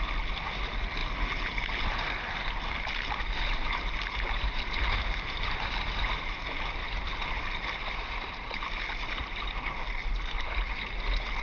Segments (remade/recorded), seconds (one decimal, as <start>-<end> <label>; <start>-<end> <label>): 0.0-11.4 recorded